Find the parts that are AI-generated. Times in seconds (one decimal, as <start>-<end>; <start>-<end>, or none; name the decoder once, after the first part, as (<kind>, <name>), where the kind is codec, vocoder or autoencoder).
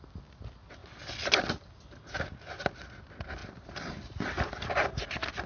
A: none